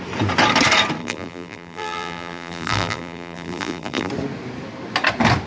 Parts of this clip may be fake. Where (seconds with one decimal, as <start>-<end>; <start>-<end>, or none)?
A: 1.0-4.1